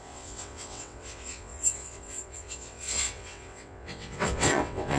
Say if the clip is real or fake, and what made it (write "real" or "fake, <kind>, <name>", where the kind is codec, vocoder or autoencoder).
fake, vocoder, WaveNeXt